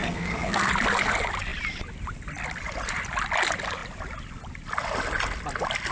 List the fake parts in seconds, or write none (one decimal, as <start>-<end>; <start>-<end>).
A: 0.0-0.7